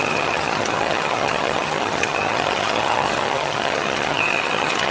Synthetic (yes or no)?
yes